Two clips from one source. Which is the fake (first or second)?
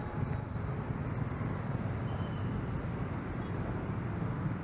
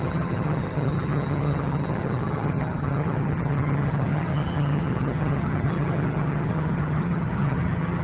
second